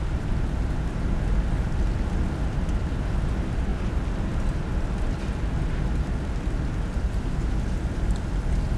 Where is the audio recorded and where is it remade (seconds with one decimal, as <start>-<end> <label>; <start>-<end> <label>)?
0.0-8.8 recorded